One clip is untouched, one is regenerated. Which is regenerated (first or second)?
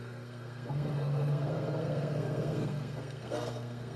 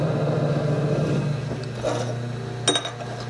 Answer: first